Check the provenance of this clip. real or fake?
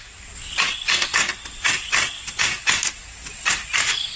real